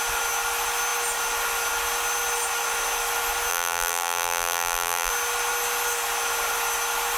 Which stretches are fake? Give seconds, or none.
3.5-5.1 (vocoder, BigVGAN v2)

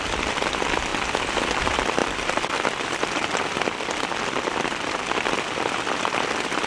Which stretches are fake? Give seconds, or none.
2.0-6.0 (vocoder, BigVGAN v2)